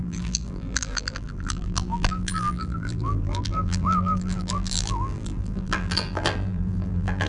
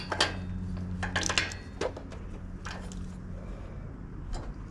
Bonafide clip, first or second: second